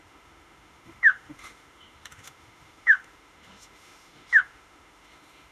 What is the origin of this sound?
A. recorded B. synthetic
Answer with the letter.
B